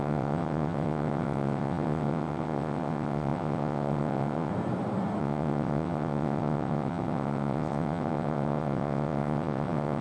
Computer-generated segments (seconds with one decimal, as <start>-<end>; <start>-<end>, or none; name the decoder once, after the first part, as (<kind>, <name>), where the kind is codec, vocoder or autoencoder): 0.0-4.5 (vocoder, WaveNeXt); 5.2-10.0